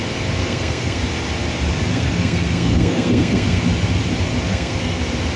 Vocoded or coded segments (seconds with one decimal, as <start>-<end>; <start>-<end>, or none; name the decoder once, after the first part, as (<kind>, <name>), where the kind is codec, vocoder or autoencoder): 0.4-1.0 (codec, SNAC); 1.9-3.6; 4.5-5.0